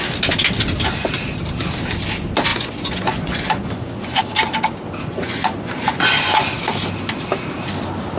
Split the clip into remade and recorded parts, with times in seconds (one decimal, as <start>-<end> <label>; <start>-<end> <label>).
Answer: 0.0-2.5 recorded; 2.5-4.2 remade; 4.2-5.1 recorded; 5.1-6.4 remade; 6.4-8.2 recorded